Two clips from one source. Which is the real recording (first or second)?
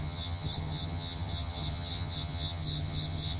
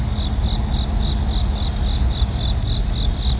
second